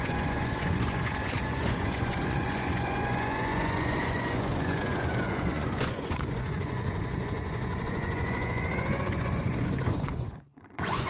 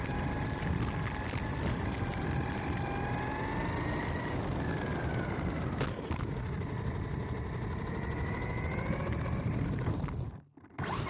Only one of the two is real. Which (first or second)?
second